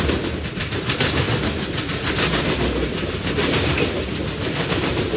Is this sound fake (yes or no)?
yes